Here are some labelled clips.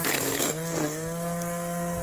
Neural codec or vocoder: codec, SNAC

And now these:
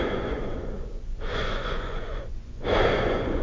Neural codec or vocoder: vocoder, Vocos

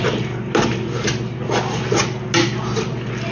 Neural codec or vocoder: none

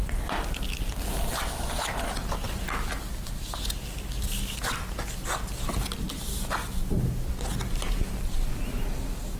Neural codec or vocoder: none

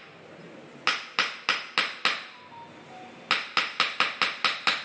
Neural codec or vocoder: none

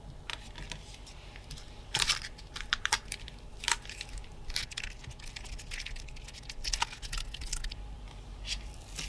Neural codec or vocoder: vocoder, BigVGAN v2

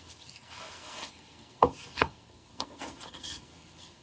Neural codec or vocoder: codec, SNAC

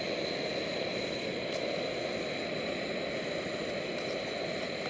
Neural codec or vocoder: none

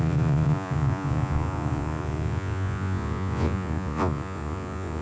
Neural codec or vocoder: vocoder, Vocos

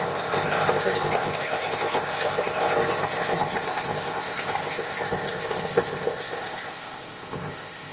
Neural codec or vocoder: codec, ZipCodec